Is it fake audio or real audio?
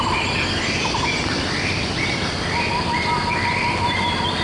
real